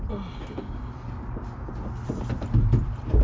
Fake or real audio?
real